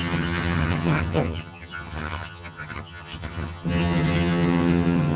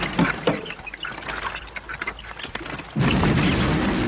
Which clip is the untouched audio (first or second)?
second